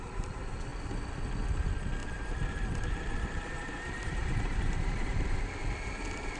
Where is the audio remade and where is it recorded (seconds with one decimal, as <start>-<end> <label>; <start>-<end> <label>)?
0.0-2.0 recorded; 2.0-5.4 remade; 5.4-6.4 recorded

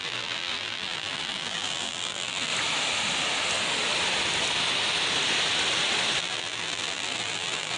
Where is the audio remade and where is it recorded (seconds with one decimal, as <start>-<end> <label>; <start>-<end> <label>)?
0.0-2.5 remade; 2.5-6.2 recorded; 6.2-7.8 remade